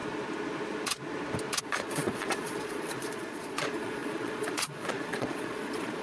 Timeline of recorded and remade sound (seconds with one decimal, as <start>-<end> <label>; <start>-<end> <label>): 0.0-1.6 recorded; 1.6-6.0 remade